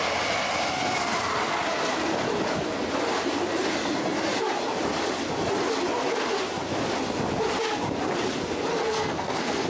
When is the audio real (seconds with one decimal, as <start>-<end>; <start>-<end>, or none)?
0.0-8.7